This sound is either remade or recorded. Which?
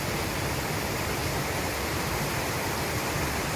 recorded